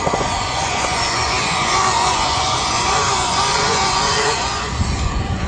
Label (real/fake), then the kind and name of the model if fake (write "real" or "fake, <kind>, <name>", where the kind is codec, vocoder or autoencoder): fake, vocoder, Vocos